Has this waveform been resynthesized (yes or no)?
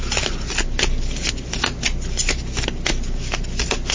no